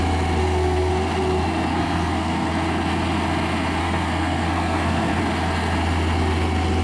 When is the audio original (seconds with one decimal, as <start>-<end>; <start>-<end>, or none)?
0.0-0.4; 0.9-1.7; 2.5-3.8; 5.2-6.8